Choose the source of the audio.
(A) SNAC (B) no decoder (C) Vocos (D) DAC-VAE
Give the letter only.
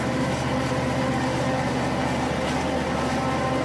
B